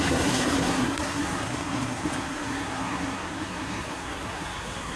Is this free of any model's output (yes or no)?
no